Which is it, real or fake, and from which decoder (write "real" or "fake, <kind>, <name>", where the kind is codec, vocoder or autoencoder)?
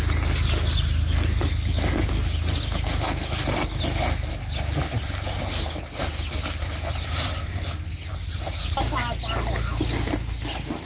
real